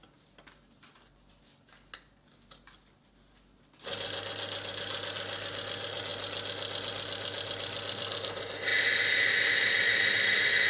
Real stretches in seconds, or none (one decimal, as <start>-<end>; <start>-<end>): 0.0-10.7